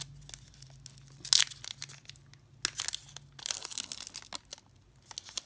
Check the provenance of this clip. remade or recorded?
recorded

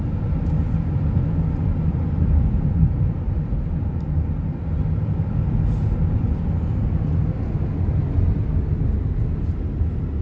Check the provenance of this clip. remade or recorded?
recorded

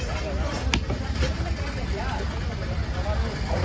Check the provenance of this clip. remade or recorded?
recorded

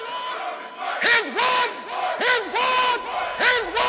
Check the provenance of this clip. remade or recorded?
recorded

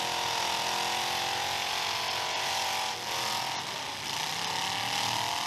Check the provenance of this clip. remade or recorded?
recorded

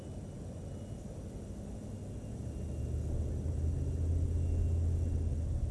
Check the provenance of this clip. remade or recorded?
recorded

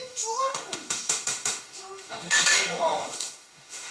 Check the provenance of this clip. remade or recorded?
remade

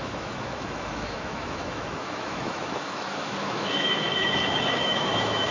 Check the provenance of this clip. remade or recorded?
remade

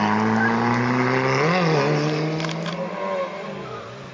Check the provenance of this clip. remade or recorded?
recorded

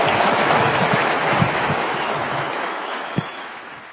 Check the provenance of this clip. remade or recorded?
remade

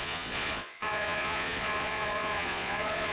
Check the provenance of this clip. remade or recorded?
remade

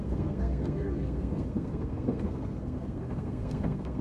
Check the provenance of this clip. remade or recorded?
remade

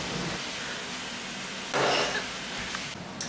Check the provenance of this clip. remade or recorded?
recorded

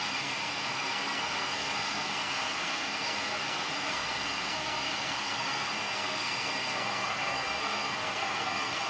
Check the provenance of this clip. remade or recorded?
remade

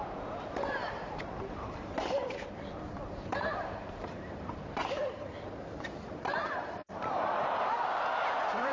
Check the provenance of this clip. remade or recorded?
remade